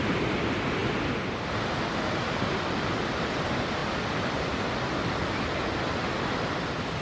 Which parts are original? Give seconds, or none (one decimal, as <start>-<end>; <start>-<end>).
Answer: 0.0-7.0